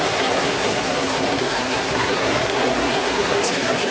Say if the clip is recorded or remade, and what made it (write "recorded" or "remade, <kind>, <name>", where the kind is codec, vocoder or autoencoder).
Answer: remade, codec, SNAC